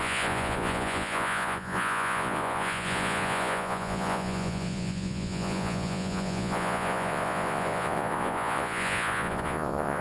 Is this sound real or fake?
fake